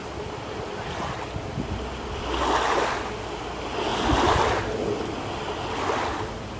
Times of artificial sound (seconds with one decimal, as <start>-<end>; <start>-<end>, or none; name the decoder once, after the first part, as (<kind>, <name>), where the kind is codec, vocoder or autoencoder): none